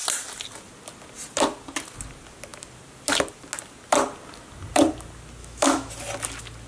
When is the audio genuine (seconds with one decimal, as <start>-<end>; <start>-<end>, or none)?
0.0-5.4; 5.9-6.7